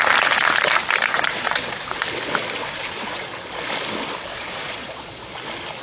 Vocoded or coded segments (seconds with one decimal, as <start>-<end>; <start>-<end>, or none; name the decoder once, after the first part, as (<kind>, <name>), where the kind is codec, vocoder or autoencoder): 1.1-2.0 (vocoder, Vocos); 2.6-3.3; 4.3-5.2